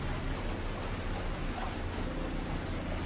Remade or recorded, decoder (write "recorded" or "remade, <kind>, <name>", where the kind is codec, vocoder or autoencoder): recorded